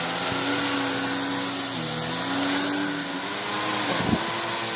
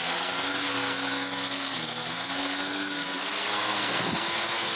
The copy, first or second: second